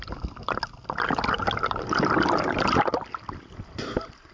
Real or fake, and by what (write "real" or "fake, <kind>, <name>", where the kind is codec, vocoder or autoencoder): real